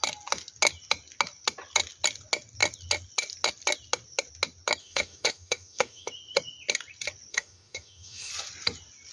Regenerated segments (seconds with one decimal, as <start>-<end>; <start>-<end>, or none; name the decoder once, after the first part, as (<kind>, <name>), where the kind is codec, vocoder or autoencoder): 4.8-6.1 (autoencoder, DAC-VAE); 7.3-8.3